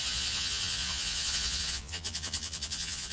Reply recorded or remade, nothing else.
remade